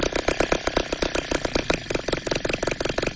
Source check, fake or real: real